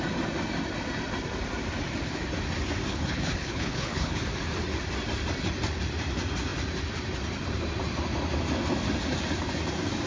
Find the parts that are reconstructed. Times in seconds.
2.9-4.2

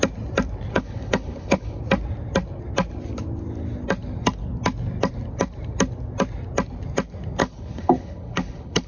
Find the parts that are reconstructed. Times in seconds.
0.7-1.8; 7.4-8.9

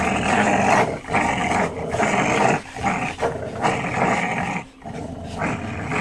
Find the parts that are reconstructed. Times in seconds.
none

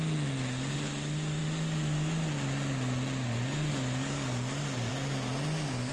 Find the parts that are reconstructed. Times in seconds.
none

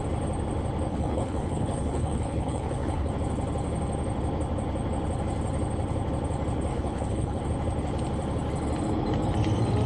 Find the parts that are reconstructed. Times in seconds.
0.9-3.1; 6.7-7.4

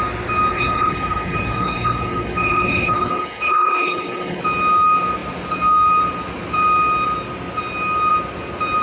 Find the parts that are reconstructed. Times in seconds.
0.5-4.4